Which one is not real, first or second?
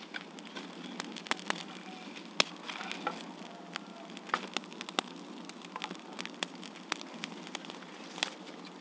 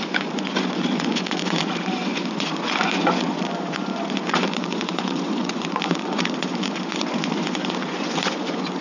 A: second